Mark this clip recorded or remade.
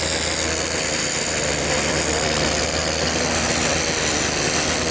recorded